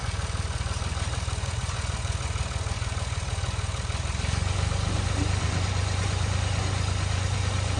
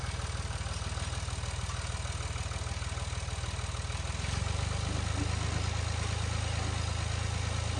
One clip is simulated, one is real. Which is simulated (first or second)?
first